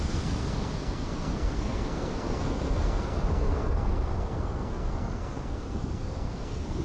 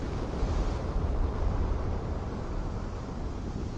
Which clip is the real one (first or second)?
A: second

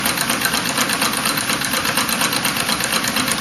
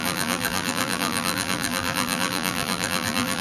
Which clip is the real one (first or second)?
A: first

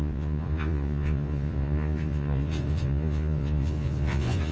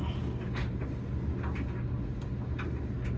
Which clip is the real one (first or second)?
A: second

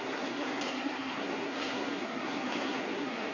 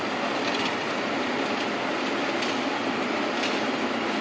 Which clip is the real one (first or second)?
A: second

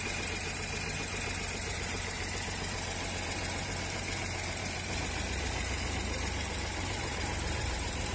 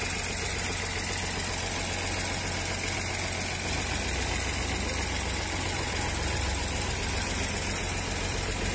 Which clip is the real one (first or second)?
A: second